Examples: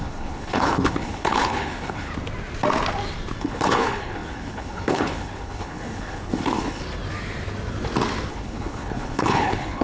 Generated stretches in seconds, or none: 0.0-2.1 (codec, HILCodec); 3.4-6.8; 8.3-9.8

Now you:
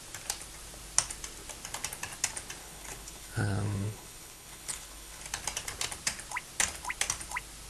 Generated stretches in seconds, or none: 2.6-5.2 (codec, HILCodec)

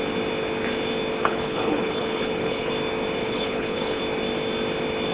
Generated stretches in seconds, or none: 1.2-2.7 (codec, HILCodec); 3.2-4.0

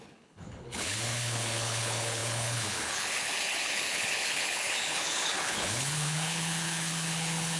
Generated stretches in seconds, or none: 0.0-7.6 (codec, HILCodec)